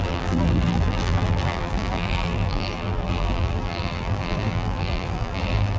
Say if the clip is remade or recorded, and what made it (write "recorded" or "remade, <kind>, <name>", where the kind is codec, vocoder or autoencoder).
remade, vocoder, BigVGAN v2